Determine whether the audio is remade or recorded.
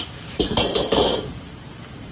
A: remade